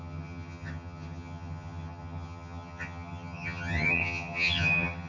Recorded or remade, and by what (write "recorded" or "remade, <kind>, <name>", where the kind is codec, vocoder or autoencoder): remade, vocoder, HiFi-GAN